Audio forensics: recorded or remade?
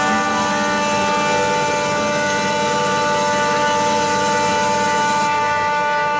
recorded